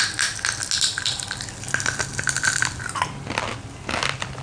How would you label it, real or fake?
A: real